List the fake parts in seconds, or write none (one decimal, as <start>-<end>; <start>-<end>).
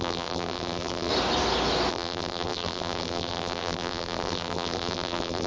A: 0.0-1.1; 1.9-5.5